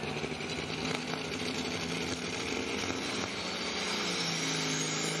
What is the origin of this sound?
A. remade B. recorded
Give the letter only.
B